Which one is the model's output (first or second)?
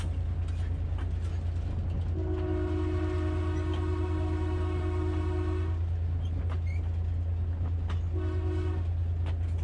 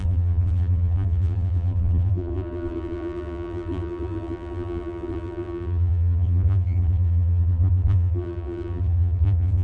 second